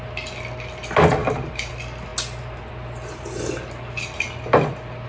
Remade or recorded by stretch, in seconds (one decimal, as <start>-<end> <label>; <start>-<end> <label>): 0.0-1.2 recorded; 1.2-1.7 remade; 1.7-5.1 recorded